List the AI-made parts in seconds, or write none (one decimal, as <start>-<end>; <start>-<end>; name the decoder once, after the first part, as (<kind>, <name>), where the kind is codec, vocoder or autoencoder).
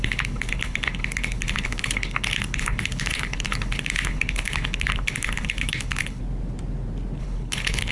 0.0-6.2 (codec, HILCodec); 7.2-7.9